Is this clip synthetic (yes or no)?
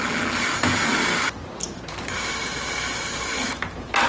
no